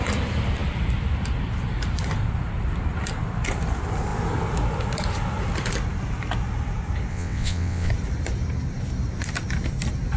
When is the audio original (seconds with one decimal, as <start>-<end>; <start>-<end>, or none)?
0.0-7.1; 7.9-10.2